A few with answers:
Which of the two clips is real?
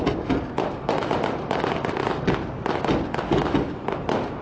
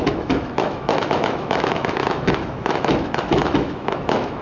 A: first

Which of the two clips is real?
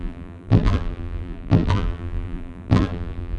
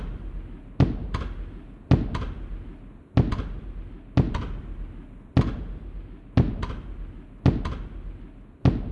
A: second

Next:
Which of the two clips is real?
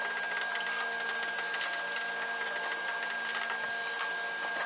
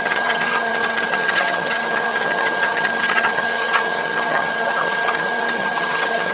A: first